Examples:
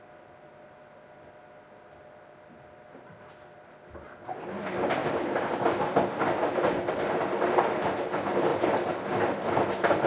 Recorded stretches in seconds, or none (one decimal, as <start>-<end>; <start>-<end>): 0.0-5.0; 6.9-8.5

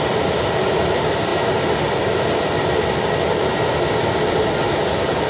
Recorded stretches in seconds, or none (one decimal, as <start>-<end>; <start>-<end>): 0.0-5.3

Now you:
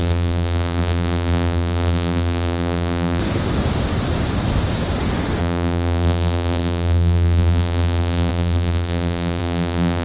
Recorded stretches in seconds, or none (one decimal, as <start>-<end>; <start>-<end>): 3.2-5.4

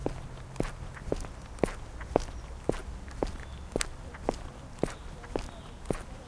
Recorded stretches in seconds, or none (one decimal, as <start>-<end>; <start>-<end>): 0.0-6.3

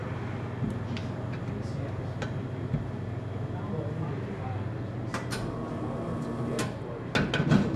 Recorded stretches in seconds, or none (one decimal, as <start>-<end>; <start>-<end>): 0.0-7.8

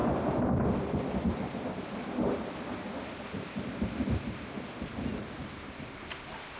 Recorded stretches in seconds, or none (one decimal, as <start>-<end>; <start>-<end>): 3.7-5.1; 6.0-6.6